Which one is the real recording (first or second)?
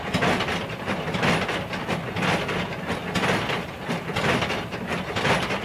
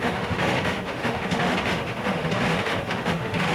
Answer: first